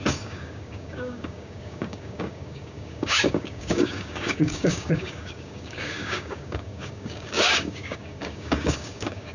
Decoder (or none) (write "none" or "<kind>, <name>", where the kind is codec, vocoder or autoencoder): codec, DAC